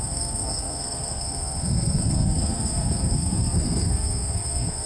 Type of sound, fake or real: fake